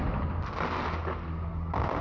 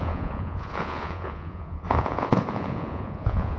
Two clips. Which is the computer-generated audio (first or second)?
second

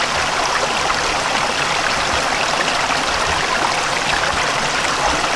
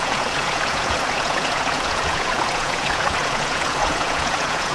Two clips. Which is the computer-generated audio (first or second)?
second